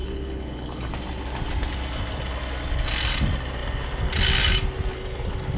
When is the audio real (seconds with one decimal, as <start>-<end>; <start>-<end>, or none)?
0.9-5.6